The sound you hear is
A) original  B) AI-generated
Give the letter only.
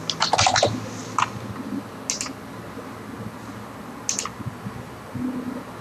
A